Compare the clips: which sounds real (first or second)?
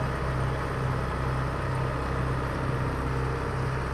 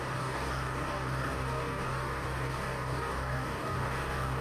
first